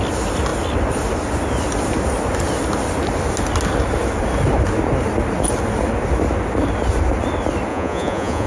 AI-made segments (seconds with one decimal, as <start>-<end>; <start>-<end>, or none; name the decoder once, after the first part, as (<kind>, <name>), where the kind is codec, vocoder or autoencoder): 7.7-8.5 (vocoder, Vocos)